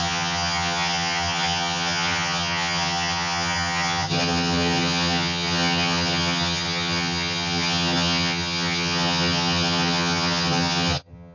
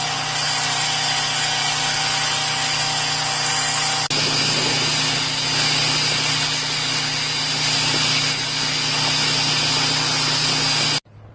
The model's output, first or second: first